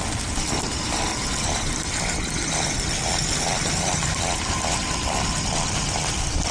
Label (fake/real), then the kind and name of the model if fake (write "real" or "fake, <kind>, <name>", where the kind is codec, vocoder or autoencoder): real